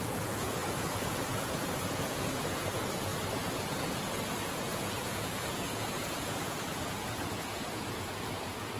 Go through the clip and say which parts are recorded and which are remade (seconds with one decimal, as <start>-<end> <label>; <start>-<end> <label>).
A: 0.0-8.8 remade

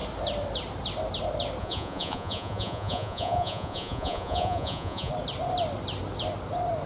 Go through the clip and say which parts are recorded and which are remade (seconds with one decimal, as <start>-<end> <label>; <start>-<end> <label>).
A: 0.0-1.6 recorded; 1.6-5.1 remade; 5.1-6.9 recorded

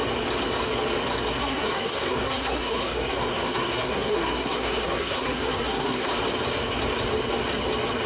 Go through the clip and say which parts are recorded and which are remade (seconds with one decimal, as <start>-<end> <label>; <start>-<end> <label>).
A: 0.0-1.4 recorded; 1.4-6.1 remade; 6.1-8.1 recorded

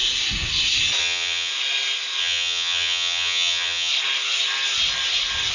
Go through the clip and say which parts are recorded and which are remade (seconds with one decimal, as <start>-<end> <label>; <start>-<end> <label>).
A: 0.0-1.0 recorded; 1.0-1.5 remade; 1.5-2.2 recorded; 2.2-3.9 remade; 3.9-5.5 recorded

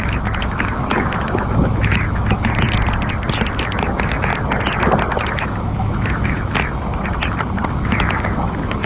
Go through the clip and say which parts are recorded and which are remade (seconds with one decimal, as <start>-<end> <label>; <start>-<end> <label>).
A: 0.0-2.5 remade; 2.5-3.5 recorded; 3.5-4.3 remade; 4.3-5.2 recorded; 5.2-6.9 remade; 6.9-7.7 recorded; 7.7-8.9 remade

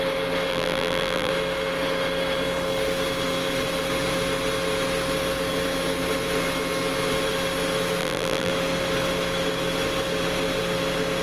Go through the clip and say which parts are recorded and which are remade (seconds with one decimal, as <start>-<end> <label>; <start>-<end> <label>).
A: 0.0-0.5 recorded; 0.5-1.3 remade; 1.3-8.0 recorded; 8.0-8.5 remade; 8.5-11.2 recorded